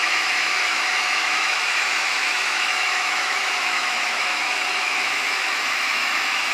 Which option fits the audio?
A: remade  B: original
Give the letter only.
A